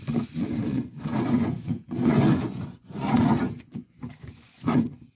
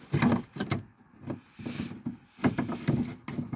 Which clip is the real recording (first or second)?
second